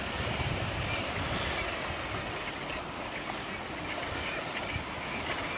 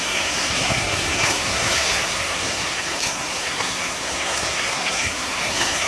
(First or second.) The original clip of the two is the first